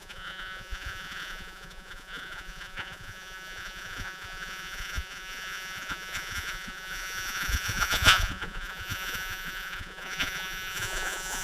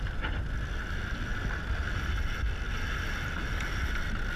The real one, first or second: second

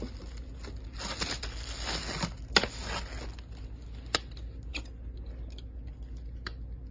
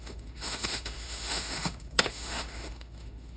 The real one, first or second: first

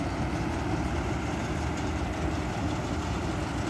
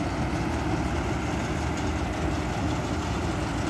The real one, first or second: second